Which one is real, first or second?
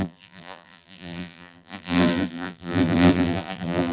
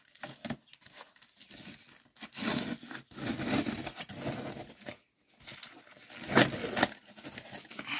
second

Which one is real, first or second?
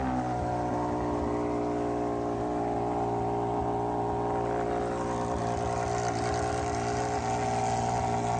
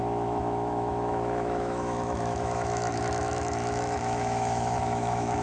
first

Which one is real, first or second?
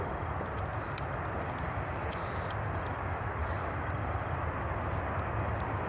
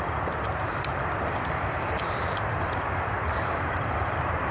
first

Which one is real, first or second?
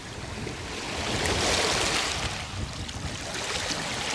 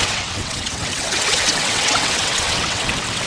first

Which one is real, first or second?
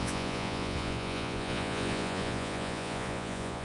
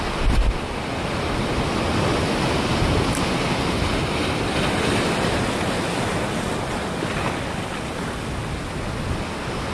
second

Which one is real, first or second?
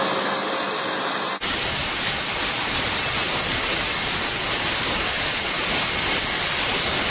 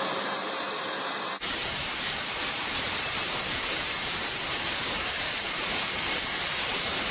first